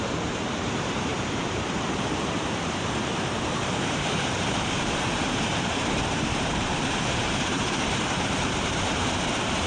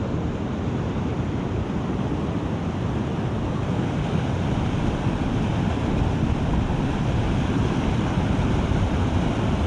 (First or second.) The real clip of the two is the second